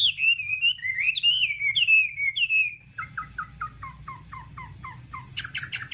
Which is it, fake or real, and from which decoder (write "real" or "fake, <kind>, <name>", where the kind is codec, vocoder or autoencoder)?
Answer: real